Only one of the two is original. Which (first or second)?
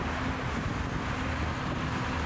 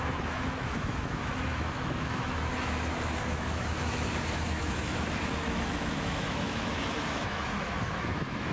first